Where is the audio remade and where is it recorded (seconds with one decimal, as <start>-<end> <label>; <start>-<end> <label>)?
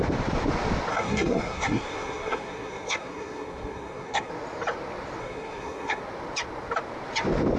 0.0-0.9 recorded; 0.9-4.3 remade; 4.3-5.2 recorded; 5.2-6.0 remade; 6.0-7.6 recorded